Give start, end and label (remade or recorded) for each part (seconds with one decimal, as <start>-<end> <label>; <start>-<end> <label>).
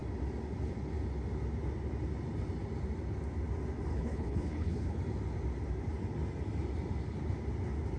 0.0-3.9 recorded; 3.9-5.0 remade; 5.0-8.0 recorded